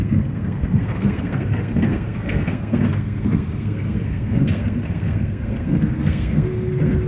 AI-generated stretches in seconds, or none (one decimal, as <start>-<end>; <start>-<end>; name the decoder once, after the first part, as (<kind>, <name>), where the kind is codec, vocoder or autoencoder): 0.0-7.1 (codec, SNAC)